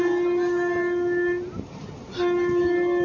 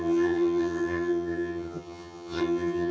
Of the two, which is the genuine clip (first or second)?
first